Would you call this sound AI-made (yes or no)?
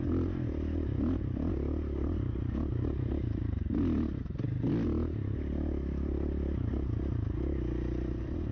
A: no